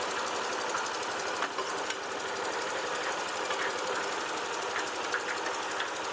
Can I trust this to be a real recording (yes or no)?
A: yes